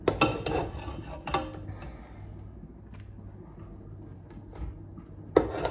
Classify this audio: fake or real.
real